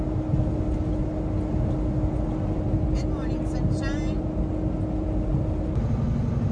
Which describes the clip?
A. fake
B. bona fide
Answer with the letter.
B